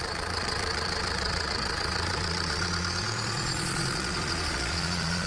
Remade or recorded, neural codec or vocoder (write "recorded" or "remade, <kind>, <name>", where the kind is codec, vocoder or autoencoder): remade, vocoder, Vocos